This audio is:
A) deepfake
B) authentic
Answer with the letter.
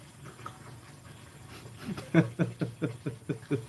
B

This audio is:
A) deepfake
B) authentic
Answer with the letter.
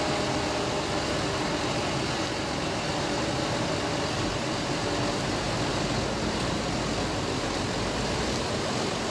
B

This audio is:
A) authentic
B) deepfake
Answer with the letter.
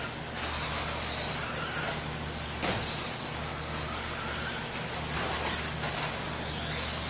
A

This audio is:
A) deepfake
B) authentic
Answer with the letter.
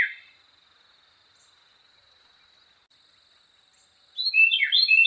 B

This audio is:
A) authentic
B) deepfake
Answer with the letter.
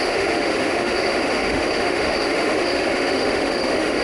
B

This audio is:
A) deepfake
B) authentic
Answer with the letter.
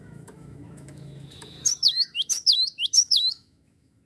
A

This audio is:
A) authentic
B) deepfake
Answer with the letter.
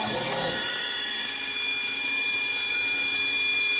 B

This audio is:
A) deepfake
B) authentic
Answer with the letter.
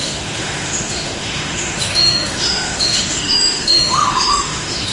A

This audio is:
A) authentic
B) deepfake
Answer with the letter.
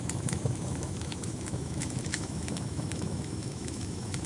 B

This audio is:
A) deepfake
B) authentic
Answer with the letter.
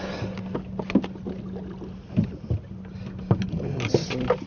B